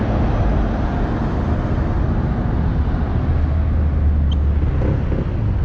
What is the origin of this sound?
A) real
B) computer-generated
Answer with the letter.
A